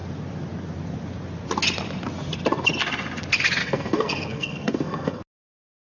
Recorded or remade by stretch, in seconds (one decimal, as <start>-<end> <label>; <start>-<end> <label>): 0.0-3.6 recorded; 3.6-5.2 remade; 5.2-5.9 recorded